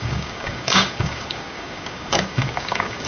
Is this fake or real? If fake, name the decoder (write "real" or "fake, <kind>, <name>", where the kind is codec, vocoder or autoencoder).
fake, codec, DAC